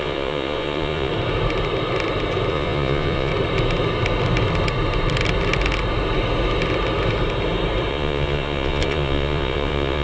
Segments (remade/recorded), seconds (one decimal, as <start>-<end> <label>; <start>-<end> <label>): 0.0-1.1 remade; 1.1-2.5 recorded; 2.5-3.3 remade; 3.3-7.9 recorded; 7.9-10.0 remade